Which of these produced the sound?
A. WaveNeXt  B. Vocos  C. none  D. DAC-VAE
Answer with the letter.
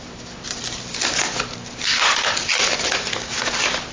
C